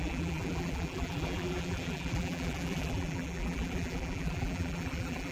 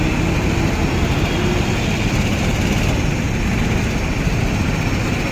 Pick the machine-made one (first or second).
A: first